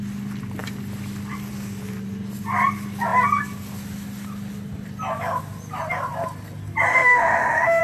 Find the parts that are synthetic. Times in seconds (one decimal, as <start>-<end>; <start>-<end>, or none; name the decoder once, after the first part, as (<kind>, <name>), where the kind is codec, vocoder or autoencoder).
6.9-7.8 (autoencoder, DAC-VAE)